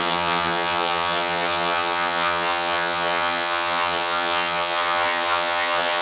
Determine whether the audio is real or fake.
fake